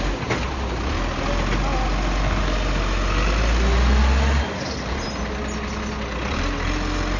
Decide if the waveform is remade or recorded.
recorded